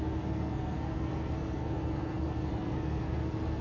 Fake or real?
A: fake